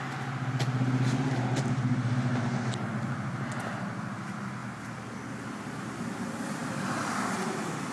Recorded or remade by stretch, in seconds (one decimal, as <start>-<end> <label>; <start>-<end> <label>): 0.0-7.9 recorded